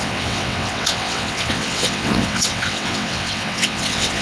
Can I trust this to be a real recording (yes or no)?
no